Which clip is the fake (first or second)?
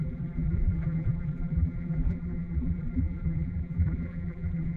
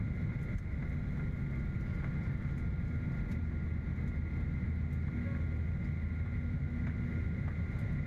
first